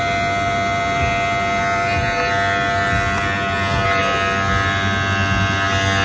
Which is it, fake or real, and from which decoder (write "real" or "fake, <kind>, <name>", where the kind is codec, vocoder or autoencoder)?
real